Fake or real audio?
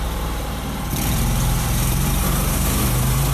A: fake